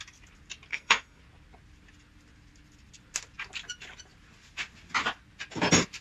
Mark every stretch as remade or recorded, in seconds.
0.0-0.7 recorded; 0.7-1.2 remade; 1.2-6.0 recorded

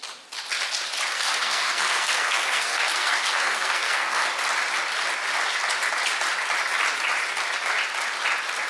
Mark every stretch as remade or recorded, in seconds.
0.0-1.1 recorded; 1.1-4.3 remade; 4.3-8.7 recorded

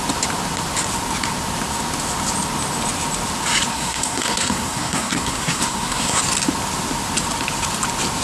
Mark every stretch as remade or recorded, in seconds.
0.0-3.7 recorded; 3.7-6.2 remade; 6.2-8.2 recorded

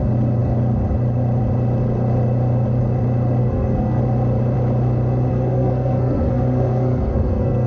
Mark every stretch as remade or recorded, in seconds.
0.0-3.4 recorded; 3.4-4.0 remade; 4.0-5.3 recorded; 5.3-7.7 remade

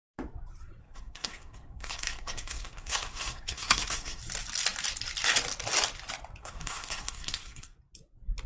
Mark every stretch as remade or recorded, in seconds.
0.0-0.8 recorded; 0.8-4.2 remade; 4.2-6.4 recorded; 6.4-7.8 remade; 7.8-8.5 recorded